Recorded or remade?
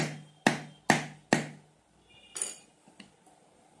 recorded